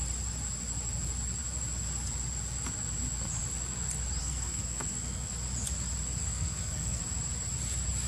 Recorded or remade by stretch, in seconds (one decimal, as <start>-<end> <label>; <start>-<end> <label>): 0.0-4.2 recorded; 4.2-5.3 remade; 5.3-6.2 recorded; 6.2-7.0 remade; 7.0-8.1 recorded